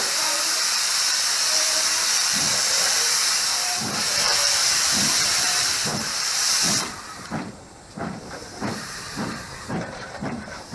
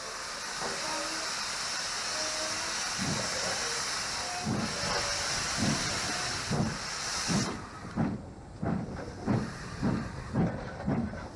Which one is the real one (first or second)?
second